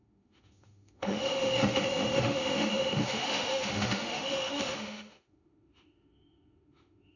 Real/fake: fake